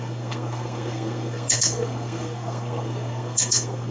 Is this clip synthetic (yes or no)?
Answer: yes